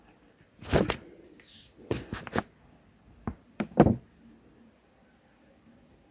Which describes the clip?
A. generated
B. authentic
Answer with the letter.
A